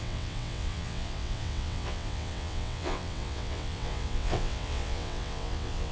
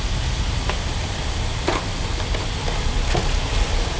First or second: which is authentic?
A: second